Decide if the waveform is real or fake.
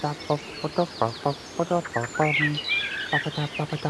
real